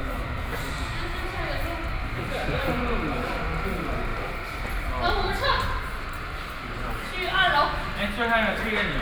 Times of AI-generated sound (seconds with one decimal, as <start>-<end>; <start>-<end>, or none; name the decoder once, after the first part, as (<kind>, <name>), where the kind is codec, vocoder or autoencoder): 4.1-5.1 (vocoder, BigVGAN v2)